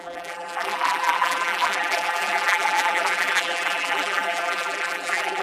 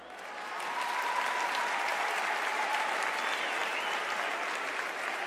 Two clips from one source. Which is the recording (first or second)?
second